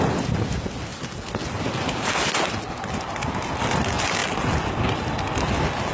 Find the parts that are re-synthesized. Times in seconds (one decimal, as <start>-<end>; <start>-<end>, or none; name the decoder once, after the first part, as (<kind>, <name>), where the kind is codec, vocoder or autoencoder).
none